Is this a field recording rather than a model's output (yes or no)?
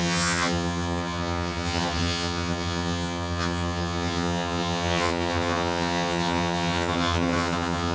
no